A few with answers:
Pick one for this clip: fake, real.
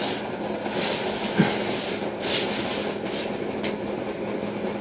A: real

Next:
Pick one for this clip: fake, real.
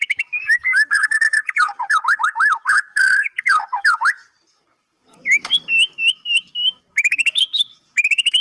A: fake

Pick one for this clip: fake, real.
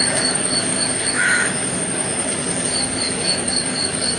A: fake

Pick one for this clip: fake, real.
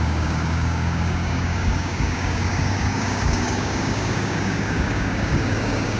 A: fake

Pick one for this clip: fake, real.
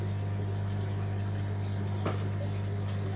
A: real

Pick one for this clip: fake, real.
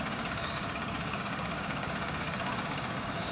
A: fake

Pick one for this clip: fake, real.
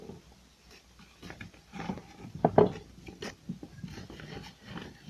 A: real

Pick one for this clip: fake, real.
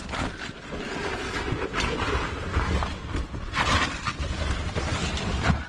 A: real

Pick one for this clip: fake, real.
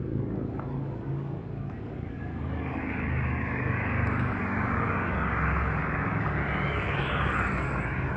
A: fake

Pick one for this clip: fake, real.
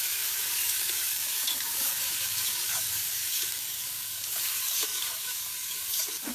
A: fake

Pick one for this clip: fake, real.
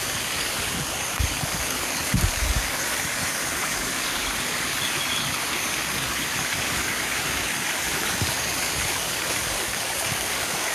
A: fake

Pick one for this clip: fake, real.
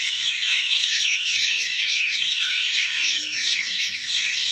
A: fake